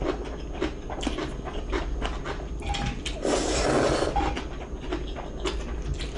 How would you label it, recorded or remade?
recorded